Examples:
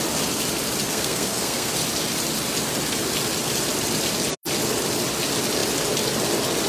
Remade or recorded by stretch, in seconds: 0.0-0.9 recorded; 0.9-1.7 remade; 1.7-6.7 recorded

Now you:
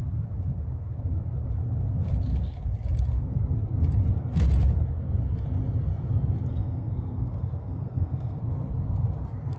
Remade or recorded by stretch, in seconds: 0.0-6.5 recorded; 6.5-8.4 remade; 8.4-9.6 recorded

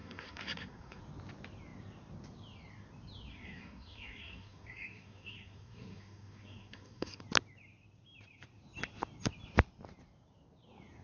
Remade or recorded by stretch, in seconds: 0.0-1.0 remade; 1.0-3.3 recorded; 3.3-7.2 remade; 7.2-11.0 recorded

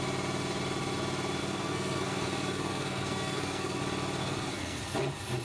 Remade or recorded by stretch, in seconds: 0.0-1.4 recorded; 1.4-3.8 remade; 3.8-4.2 recorded; 4.2-4.8 remade; 4.8-5.4 recorded

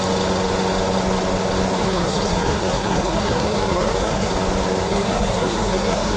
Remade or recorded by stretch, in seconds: 0.0-1.8 recorded; 1.8-4.3 remade; 4.3-4.8 recorded; 4.8-6.2 remade

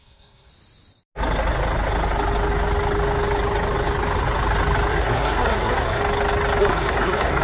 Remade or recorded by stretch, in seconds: 0.0-0.5 remade; 0.5-4.9 recorded; 4.9-6.0 remade; 6.0-6.6 recorded; 6.6-7.4 remade

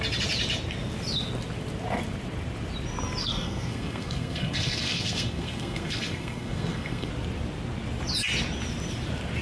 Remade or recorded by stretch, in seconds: 0.0-3.2 recorded; 3.2-7.1 remade; 7.1-9.4 recorded